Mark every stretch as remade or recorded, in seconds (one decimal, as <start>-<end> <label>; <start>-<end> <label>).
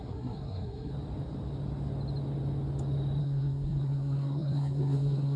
0.0-0.9 remade; 0.9-3.2 recorded; 3.2-5.4 remade